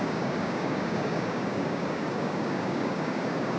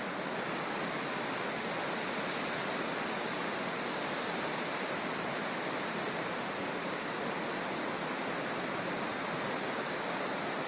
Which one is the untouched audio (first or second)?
second